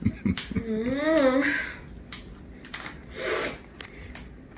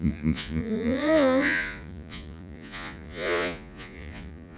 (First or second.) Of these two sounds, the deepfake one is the second